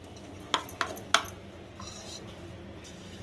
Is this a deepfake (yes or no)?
no